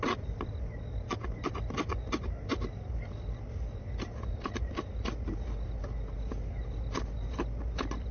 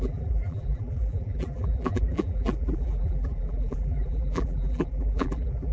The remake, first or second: second